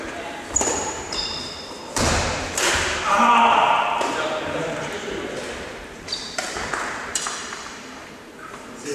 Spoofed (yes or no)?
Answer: yes